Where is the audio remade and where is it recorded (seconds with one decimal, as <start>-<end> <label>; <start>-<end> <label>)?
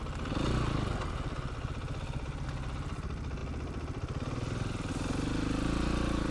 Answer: 0.0-6.3 recorded